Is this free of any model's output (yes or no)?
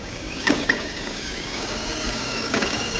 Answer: no